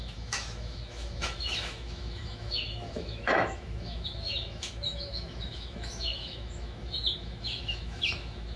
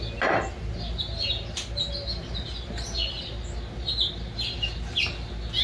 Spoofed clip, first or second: first